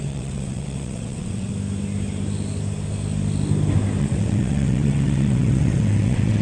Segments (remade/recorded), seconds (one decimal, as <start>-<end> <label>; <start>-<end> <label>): 0.0-1.5 remade; 1.5-4.0 recorded; 4.0-6.4 remade